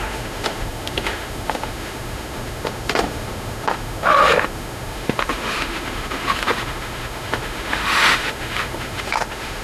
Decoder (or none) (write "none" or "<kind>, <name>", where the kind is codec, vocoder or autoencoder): autoencoder, DAC-VAE